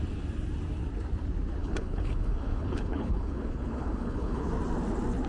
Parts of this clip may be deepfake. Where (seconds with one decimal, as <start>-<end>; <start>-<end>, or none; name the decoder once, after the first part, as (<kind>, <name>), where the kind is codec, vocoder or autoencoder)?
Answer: 1.6-4.5 (codec, HILCodec)

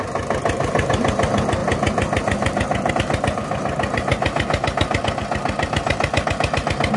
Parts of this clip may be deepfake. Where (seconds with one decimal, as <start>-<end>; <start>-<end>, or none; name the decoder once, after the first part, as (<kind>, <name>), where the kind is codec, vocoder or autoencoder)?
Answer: none

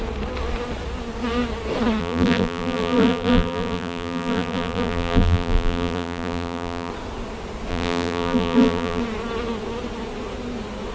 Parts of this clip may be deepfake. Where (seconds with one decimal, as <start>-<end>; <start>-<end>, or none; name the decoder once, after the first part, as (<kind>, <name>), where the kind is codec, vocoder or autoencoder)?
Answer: 2.0-6.9 (vocoder, BigVGAN v2); 7.7-9.0